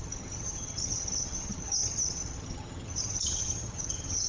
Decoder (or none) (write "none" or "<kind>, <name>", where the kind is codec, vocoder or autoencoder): vocoder, HiFi-GAN